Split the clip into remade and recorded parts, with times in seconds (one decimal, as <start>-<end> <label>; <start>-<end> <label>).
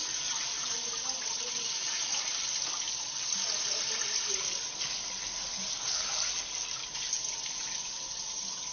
0.0-8.7 recorded